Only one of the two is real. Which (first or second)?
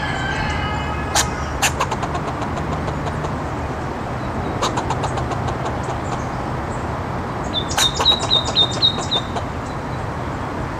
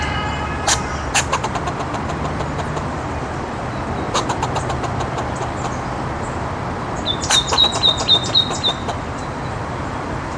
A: first